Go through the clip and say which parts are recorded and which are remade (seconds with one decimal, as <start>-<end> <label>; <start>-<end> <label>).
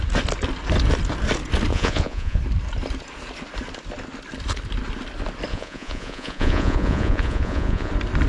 0.0-1.7 recorded; 1.7-2.4 remade; 2.4-5.5 recorded; 5.5-7.9 remade; 7.9-8.3 recorded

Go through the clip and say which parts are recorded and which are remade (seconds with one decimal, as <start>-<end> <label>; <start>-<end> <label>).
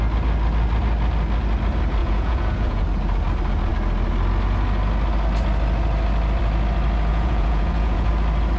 0.0-2.0 recorded; 2.0-2.8 remade; 2.8-7.1 recorded; 7.1-8.1 remade; 8.1-8.6 recorded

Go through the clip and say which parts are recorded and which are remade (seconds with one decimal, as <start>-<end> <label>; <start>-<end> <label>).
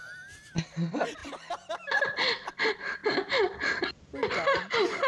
0.0-3.0 remade; 3.0-3.8 recorded; 3.8-5.1 remade